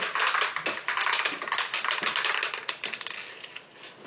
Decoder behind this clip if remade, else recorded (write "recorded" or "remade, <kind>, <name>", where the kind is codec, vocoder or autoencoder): recorded